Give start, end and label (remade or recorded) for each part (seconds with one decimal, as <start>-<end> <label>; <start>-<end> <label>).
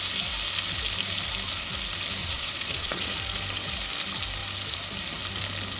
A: 0.0-2.2 recorded; 2.2-3.1 remade; 3.1-5.8 recorded